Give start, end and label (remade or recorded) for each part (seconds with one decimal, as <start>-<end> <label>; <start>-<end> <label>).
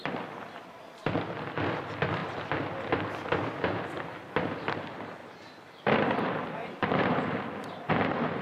0.0-5.2 recorded; 5.2-7.9 remade; 7.9-8.4 recorded